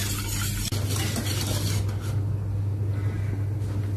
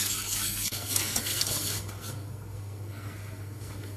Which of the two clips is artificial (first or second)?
second